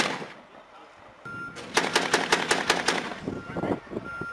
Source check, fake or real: real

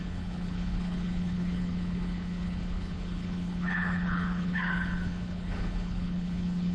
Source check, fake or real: fake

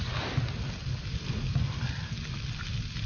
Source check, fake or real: real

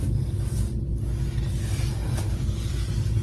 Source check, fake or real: real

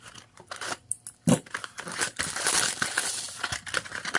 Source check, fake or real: real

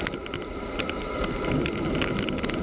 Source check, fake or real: real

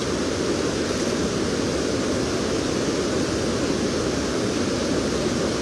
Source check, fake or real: real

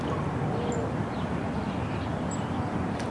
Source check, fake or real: real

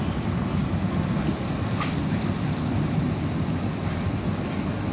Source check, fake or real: real